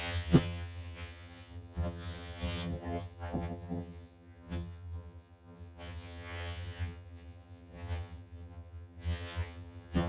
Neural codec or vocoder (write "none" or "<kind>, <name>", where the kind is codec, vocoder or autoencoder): vocoder, HiFi-GAN